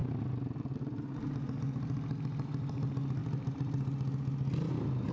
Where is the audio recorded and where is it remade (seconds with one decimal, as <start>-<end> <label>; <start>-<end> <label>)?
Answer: 0.0-5.1 recorded